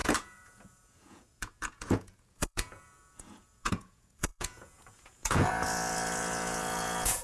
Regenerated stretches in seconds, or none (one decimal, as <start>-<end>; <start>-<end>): 0.0-7.2